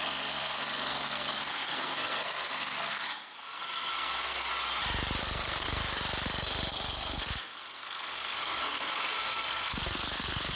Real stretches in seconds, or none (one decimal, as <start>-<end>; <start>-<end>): 4.5-5.2; 5.8-6.7